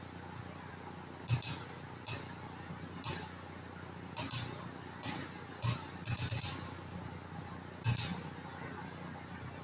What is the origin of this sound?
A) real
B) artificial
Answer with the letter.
A